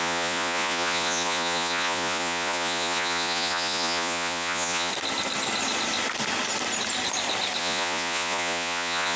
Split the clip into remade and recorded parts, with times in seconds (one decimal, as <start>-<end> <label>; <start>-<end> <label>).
0.0-4.9 remade; 4.9-7.6 recorded; 7.6-9.2 remade